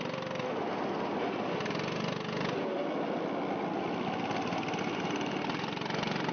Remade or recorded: recorded